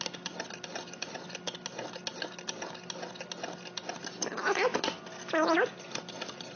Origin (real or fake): real